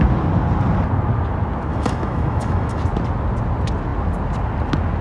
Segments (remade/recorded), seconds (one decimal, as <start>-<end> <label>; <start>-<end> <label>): 0.0-1.7 recorded; 1.7-2.8 remade; 2.8-5.0 recorded